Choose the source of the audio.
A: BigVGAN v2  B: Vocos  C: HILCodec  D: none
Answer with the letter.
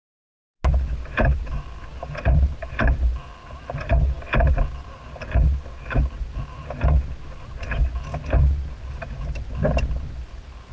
D